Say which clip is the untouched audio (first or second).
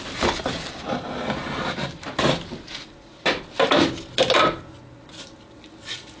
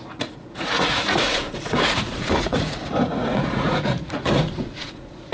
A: first